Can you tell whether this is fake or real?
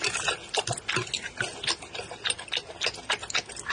real